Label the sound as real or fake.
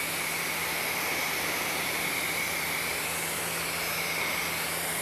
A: real